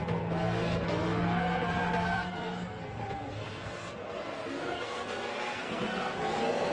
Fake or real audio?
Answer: fake